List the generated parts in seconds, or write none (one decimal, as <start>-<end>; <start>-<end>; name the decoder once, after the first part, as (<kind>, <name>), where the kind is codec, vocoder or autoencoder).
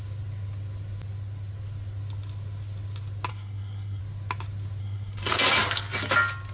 3.3-4.0 (codec, SNAC); 4.8-5.3